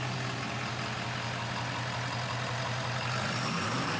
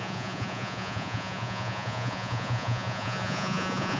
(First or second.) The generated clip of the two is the second